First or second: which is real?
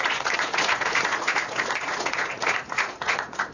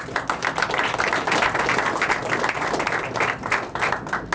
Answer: second